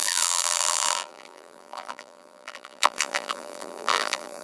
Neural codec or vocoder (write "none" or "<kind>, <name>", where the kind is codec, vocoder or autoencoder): vocoder, BigVGAN v2